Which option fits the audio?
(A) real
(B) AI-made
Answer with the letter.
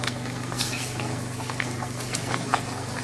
B